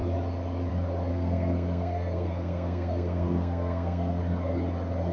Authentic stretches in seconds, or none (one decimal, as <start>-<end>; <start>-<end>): 0.0-1.1; 4.2-5.1